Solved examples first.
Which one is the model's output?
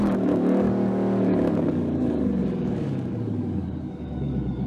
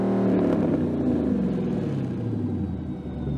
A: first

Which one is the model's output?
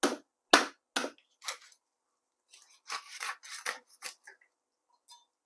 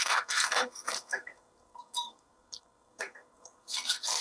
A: second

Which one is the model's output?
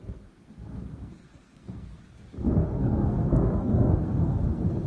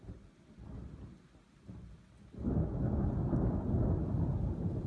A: first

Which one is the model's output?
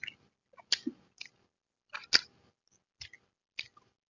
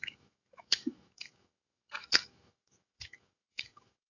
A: second